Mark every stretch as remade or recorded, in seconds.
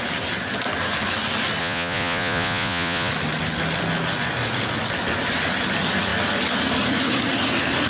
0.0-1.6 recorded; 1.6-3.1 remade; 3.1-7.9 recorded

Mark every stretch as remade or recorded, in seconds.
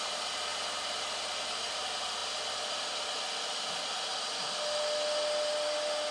0.0-6.1 recorded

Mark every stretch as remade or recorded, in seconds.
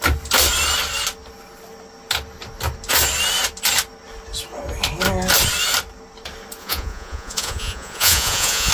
0.0-6.6 recorded; 6.6-8.7 remade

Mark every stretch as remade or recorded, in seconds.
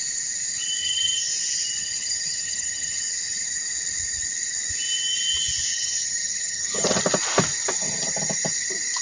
0.0-0.8 recorded; 0.8-1.3 remade; 1.3-1.8 recorded; 1.8-3.0 remade; 3.0-5.7 recorded; 5.7-7.0 remade; 7.0-9.0 recorded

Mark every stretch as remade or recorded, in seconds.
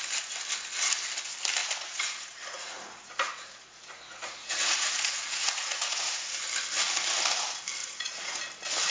0.0-1.6 recorded; 1.6-6.1 remade; 6.1-7.8 recorded; 7.8-8.4 remade; 8.4-8.9 recorded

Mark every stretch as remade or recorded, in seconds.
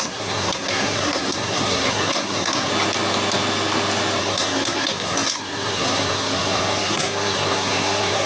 0.0-2.7 remade; 2.7-4.2 recorded; 4.2-8.3 remade